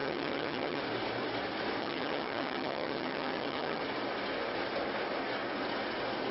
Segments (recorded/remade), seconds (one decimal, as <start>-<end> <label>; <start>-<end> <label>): 0.0-0.8 remade; 0.8-1.8 recorded; 1.8-3.8 remade; 3.8-6.3 recorded